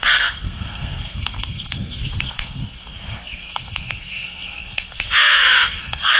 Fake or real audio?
fake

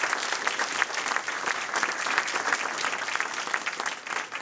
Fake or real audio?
real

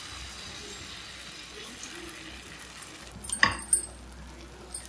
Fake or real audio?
real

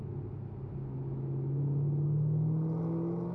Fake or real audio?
real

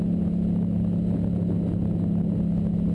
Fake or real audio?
real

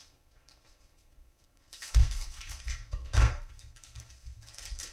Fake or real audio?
fake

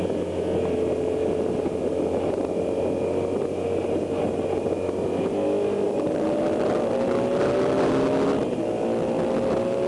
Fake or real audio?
real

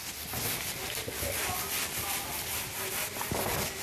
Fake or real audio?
real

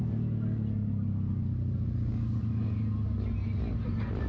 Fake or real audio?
real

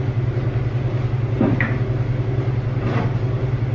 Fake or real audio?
real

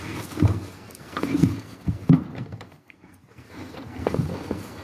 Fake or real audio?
fake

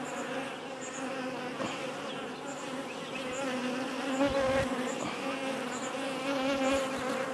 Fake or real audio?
real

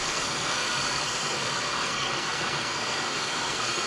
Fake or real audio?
fake